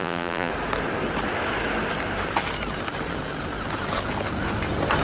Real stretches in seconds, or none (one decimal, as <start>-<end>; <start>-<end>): 0.5-5.0